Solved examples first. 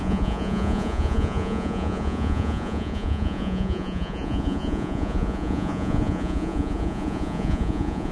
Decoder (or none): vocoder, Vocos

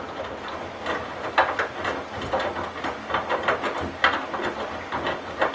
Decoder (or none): none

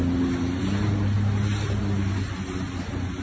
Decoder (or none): none